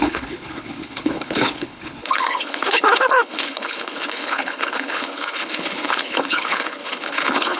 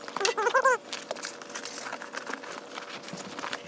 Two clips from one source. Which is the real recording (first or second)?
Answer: second